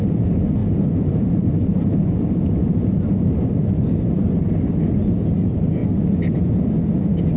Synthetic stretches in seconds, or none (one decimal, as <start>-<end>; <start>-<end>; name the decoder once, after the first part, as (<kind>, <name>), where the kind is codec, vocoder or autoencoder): 0.6-4.4 (vocoder, BigVGAN v2)

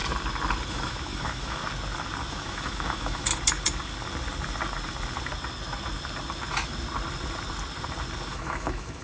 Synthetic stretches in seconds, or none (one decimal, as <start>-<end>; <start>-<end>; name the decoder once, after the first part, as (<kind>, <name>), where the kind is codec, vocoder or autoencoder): 0.7-1.6 (autoencoder, DAC-VAE); 2.3-3.3; 8.3-9.0